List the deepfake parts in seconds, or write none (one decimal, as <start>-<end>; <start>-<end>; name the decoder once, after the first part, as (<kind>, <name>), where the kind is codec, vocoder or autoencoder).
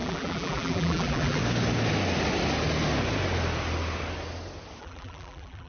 0.0-1.4 (vocoder, BigVGAN v2); 4.8-5.7